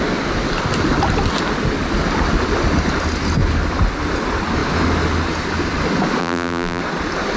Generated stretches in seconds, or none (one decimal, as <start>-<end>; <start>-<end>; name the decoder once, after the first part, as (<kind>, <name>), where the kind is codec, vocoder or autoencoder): 6.2-6.8 (vocoder, BigVGAN v2)